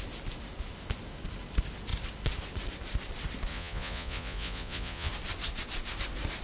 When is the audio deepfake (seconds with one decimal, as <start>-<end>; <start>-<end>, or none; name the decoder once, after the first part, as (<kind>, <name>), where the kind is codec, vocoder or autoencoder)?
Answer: 3.5-5.1 (vocoder, Vocos)